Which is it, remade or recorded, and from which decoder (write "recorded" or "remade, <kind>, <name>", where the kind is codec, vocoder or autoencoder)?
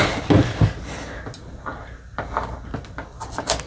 recorded